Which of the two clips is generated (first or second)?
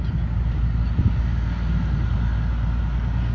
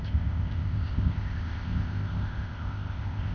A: second